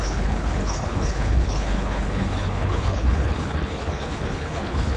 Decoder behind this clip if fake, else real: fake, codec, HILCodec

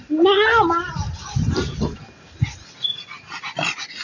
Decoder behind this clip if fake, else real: real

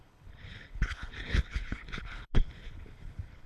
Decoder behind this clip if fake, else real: fake, codec, HILCodec